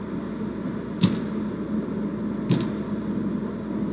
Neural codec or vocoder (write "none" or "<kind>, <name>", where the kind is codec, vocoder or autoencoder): none